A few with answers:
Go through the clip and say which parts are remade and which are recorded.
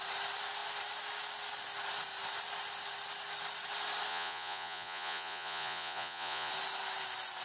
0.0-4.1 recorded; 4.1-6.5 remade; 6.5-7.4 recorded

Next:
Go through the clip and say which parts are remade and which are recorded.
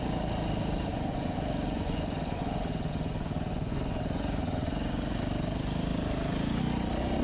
0.0-0.9 recorded; 0.9-5.2 remade; 5.2-7.2 recorded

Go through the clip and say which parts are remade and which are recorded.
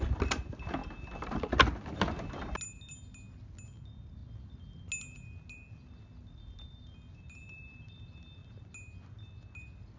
0.0-10.0 recorded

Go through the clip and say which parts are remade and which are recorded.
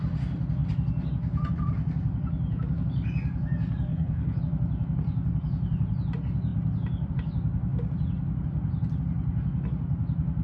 0.0-3.9 recorded; 3.9-4.4 remade; 4.4-10.4 recorded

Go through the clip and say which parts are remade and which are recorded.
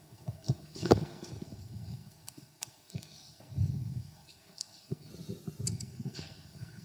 0.0-5.1 remade; 5.1-5.7 recorded; 5.7-6.8 remade